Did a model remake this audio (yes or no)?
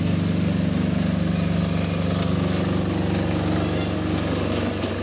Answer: no